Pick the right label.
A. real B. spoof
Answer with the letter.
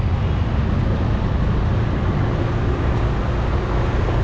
A